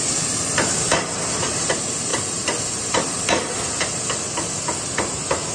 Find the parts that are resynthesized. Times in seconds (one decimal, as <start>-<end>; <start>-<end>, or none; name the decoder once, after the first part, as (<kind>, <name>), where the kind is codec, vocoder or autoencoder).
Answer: none